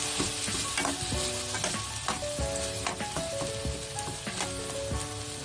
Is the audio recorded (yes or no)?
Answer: yes